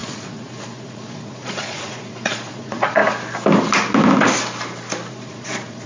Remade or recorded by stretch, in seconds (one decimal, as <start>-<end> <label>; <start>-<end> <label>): 0.0-3.0 remade; 3.0-5.1 recorded; 5.1-5.9 remade